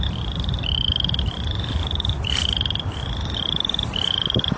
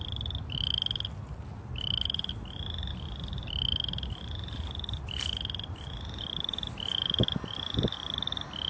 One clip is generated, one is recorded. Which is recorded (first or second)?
second